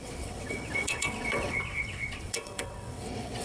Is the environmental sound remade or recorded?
remade